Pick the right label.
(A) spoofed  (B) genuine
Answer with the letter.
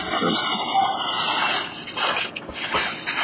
B